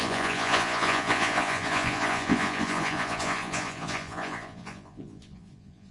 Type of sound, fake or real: fake